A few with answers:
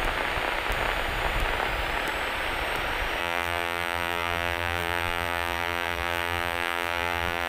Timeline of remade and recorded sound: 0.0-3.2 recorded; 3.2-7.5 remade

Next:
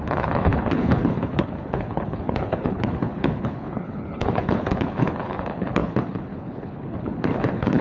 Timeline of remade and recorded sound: 0.0-7.8 remade

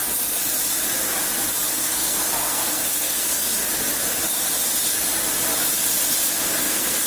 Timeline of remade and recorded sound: 0.0-1.7 recorded; 1.7-3.5 remade; 3.5-6.2 recorded; 6.2-7.1 remade

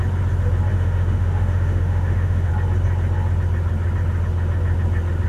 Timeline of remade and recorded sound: 0.0-0.7 recorded; 0.7-2.5 remade; 2.5-5.3 recorded

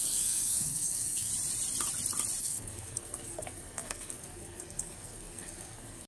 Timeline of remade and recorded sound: 0.0-1.3 remade; 1.3-2.4 recorded; 2.4-6.1 remade